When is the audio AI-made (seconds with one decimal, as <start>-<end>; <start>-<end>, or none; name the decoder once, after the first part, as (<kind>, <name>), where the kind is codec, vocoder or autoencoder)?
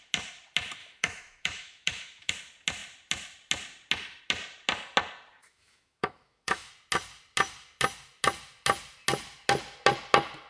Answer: 0.8-2.3 (autoencoder, DAC-VAE); 5.4-6.7